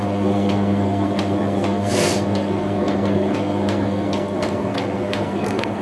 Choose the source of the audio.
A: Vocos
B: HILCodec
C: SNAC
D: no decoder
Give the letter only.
C